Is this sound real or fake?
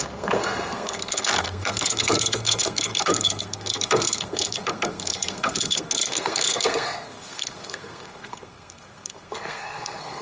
fake